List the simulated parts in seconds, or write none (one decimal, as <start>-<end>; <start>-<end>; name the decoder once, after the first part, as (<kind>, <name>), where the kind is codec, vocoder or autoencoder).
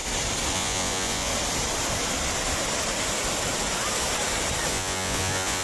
0.5-1.3 (vocoder, Vocos); 4.7-5.6